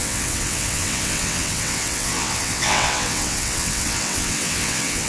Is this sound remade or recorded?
remade